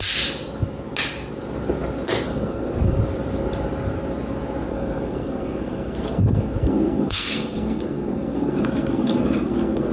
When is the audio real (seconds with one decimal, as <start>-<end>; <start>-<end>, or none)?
0.0-2.3; 3.0-4.7